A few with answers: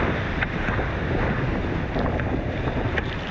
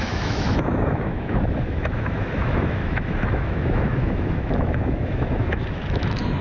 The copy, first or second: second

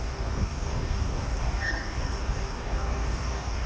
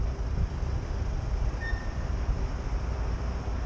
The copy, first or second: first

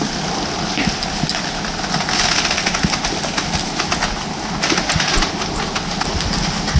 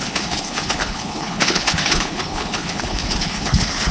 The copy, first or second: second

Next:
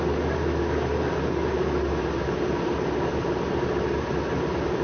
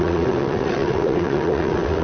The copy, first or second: second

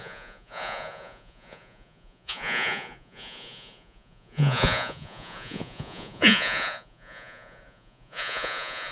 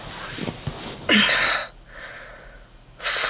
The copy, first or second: first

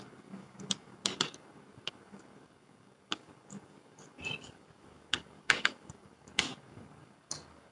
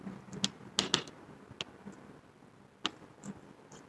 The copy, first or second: first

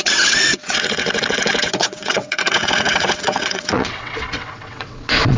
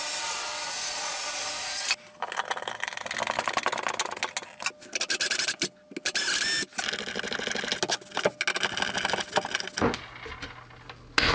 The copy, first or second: first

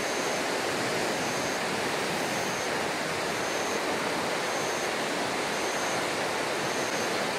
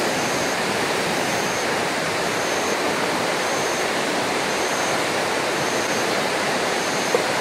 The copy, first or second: second